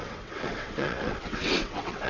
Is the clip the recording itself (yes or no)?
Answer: no